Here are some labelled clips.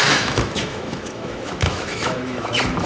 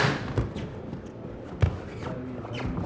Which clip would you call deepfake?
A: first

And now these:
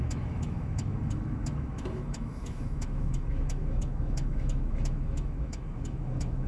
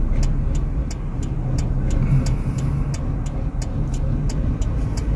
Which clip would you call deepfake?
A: first